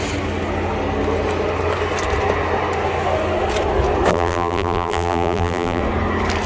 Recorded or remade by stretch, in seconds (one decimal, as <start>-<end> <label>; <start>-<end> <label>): 0.0-4.1 recorded; 4.1-5.8 remade; 5.8-6.5 recorded